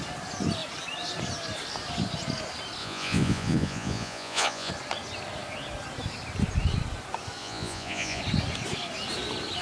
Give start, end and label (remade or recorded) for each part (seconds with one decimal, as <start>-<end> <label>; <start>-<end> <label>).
0.0-2.8 recorded; 2.8-4.7 remade; 4.7-7.4 recorded; 7.4-8.2 remade; 8.2-9.6 recorded